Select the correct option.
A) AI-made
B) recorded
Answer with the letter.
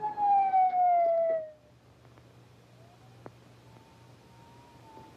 B